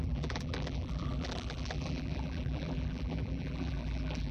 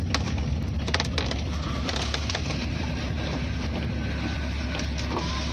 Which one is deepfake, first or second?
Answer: first